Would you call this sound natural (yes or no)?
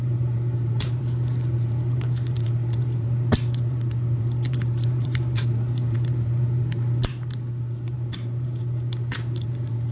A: no